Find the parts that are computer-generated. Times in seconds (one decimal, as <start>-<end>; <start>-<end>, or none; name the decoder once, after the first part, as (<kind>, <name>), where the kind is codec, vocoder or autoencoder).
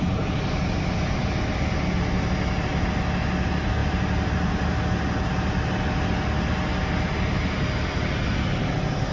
none